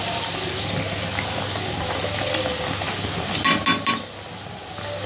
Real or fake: real